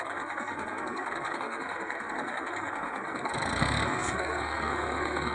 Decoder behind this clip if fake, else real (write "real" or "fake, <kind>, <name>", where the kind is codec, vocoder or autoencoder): fake, codec, SNAC